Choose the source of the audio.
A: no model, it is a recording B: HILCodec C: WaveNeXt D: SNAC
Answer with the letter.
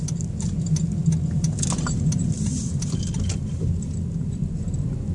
A